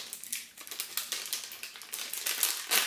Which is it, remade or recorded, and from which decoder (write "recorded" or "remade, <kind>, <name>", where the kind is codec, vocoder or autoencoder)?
recorded